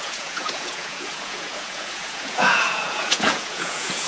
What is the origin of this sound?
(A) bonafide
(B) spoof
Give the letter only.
B